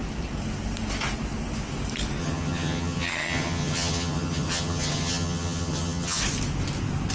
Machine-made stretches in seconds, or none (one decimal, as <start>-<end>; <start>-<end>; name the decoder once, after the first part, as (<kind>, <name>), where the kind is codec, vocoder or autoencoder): 2.2-6.2 (vocoder, HiFi-GAN)